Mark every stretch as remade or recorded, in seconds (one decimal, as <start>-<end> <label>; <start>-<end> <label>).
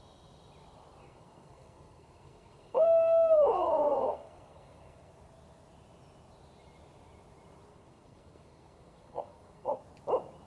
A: 0.0-1.0 recorded; 1.0-5.1 remade; 5.1-7.7 recorded; 7.7-9.8 remade; 9.8-10.5 recorded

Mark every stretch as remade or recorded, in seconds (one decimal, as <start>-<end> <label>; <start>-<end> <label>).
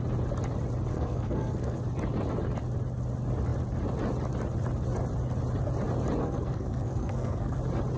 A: 0.0-0.9 recorded; 0.9-1.8 remade; 1.8-6.2 recorded; 6.2-7.6 remade; 7.6-8.0 recorded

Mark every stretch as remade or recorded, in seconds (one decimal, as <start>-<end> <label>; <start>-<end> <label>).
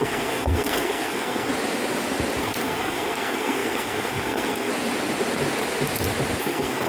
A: 0.0-1.5 remade; 1.5-2.4 recorded; 2.4-4.7 remade; 4.7-6.4 recorded; 6.4-6.9 remade